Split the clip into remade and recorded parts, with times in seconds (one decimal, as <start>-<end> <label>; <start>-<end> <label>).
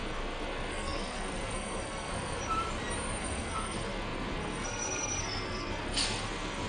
0.0-2.4 remade; 2.4-3.2 recorded; 3.2-6.7 remade